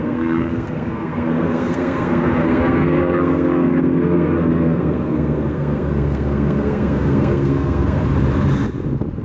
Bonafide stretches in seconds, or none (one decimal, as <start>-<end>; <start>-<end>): 8.0-9.2